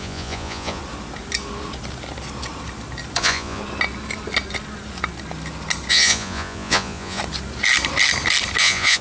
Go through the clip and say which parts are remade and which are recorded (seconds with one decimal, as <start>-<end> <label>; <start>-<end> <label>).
0.0-0.8 remade; 0.8-3.2 recorded; 3.2-3.6 remade; 3.6-5.9 recorded; 5.9-7.2 remade; 7.2-8.6 recorded; 8.6-9.0 remade

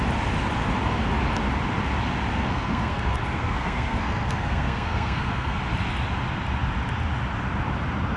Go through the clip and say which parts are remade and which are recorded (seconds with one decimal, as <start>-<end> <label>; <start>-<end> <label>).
0.0-2.3 recorded; 2.3-5.6 remade; 5.6-8.2 recorded

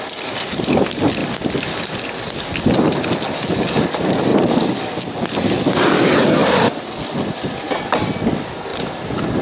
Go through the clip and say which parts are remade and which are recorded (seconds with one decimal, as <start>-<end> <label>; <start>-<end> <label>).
0.0-1.2 recorded; 1.2-1.9 remade; 1.9-6.4 recorded; 6.4-7.4 remade; 7.4-8.7 recorded; 8.7-9.4 remade